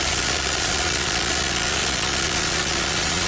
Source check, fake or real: fake